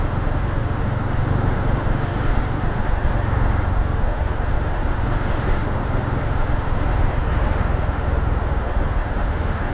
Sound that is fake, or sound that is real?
fake